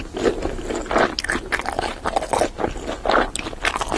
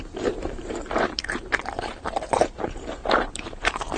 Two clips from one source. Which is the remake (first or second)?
second